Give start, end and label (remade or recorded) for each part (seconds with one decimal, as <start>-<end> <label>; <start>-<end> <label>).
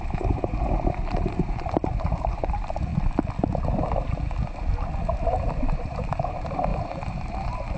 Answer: 0.0-2.9 remade; 2.9-5.8 recorded; 5.8-6.7 remade; 6.7-7.8 recorded